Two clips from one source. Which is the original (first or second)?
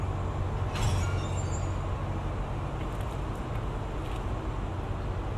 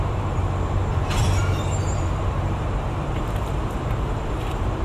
first